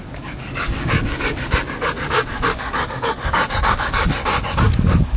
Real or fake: fake